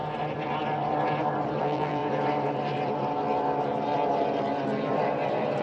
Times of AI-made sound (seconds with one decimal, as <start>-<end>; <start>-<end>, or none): 1.6-2.0